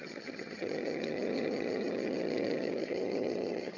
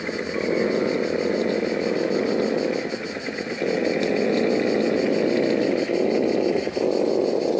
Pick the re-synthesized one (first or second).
first